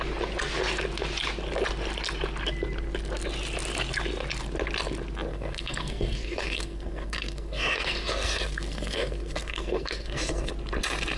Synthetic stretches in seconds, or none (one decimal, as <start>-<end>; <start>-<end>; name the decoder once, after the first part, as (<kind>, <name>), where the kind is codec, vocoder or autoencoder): 5.3-10.5 (codec, SNAC)